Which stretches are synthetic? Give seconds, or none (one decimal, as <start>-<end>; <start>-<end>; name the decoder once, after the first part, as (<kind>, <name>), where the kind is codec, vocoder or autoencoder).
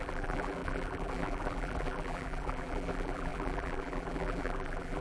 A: 0.0-5.0 (vocoder, BigVGAN v2)